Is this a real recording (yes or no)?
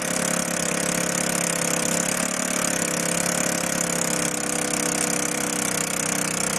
yes